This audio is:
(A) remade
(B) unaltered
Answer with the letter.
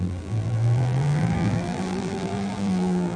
A